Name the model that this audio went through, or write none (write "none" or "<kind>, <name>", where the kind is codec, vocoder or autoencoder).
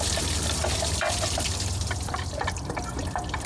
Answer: none